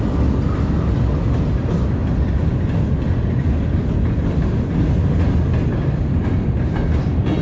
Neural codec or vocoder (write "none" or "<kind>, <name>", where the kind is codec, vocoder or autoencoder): none